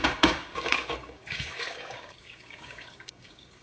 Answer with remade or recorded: remade